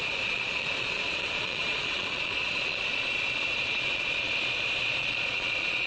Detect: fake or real fake